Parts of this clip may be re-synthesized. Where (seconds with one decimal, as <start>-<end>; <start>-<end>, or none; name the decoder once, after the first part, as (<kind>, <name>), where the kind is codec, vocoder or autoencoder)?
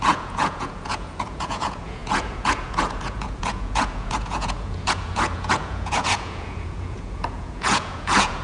0.0-8.4 (vocoder, Vocos)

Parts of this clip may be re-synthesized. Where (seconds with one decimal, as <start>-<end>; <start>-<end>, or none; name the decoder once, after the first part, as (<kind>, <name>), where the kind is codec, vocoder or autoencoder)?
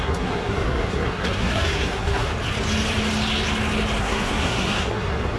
0.0-2.3 (codec, SNAC); 4.0-5.4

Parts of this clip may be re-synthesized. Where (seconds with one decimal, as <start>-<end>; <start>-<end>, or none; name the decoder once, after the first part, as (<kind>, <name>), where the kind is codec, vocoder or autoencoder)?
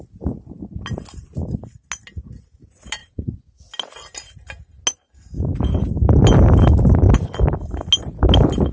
3.0-3.6 (vocoder, Vocos)